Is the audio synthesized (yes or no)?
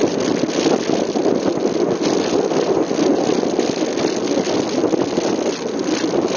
no